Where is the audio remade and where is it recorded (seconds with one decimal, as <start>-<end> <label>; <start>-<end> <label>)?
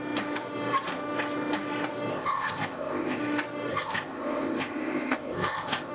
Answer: 0.0-2.1 recorded; 2.1-3.2 remade; 3.2-3.7 recorded; 3.7-5.9 remade